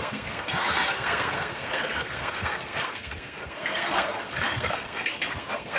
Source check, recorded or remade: remade